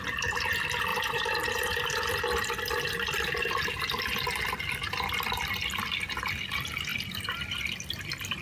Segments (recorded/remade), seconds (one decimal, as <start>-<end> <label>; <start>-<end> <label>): 0.0-0.9 recorded; 0.9-4.0 remade; 4.0-6.9 recorded; 6.9-8.4 remade